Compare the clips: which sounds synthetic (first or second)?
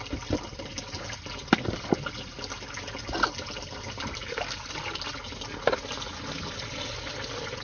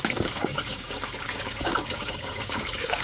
second